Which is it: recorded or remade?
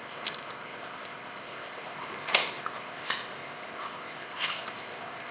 remade